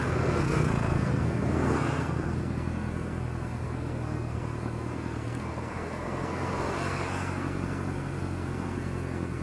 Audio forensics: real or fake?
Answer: fake